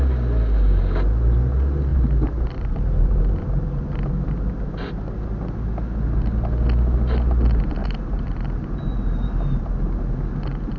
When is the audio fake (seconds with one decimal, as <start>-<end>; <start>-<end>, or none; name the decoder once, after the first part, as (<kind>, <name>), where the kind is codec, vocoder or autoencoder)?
1.9-3.3 (vocoder, BigVGAN v2); 7.8-9.7